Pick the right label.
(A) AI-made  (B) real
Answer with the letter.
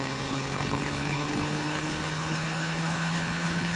A